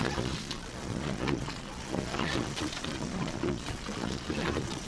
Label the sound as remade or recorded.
remade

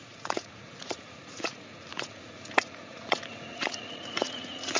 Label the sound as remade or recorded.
remade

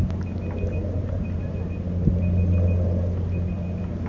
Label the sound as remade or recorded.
recorded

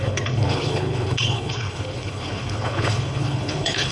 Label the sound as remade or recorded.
remade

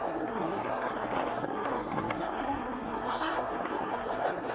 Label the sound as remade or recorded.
remade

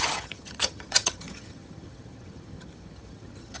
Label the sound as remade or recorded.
remade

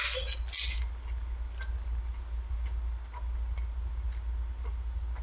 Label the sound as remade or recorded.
recorded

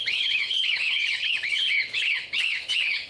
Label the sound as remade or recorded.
remade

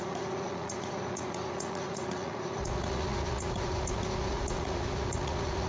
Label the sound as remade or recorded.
remade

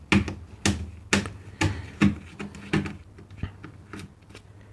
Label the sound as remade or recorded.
recorded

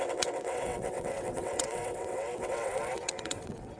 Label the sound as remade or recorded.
remade